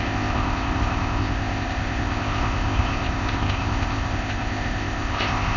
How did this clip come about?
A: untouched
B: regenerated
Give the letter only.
B